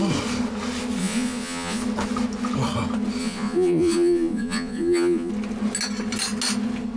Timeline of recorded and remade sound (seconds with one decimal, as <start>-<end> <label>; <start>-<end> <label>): 0.0-1.0 recorded; 1.0-1.8 remade; 1.8-3.2 recorded; 3.2-5.3 remade; 5.3-7.0 recorded